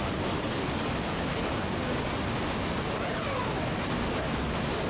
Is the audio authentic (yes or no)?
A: yes